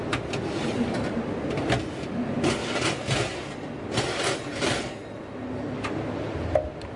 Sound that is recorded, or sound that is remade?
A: recorded